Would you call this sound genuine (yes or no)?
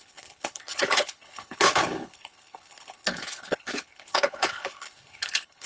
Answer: no